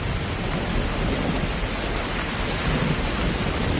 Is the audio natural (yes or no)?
yes